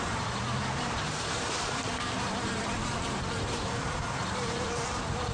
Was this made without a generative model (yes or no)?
no